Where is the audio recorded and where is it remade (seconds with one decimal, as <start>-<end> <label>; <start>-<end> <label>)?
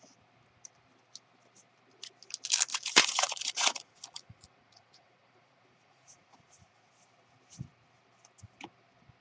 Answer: 0.0-2.7 recorded; 2.7-6.9 remade; 6.9-9.2 recorded